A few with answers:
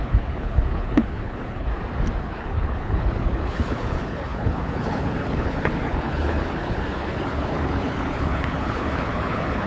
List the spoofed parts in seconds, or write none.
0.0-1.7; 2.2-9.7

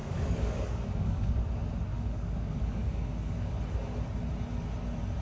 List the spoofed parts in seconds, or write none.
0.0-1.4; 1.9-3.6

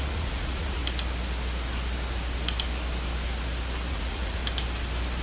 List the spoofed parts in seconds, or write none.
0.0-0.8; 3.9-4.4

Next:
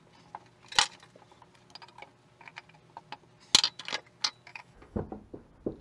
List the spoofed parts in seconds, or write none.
4.5-5.0

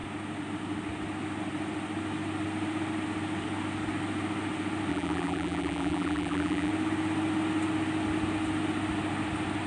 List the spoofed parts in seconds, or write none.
4.9-6.7